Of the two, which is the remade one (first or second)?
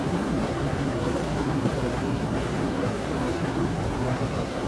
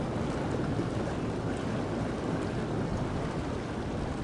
first